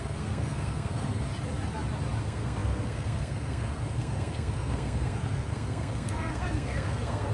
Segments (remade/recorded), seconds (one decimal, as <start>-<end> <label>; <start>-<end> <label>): 0.0-1.3 remade; 1.3-2.2 recorded; 2.2-7.3 remade